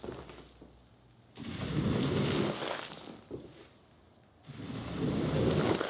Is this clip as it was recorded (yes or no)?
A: yes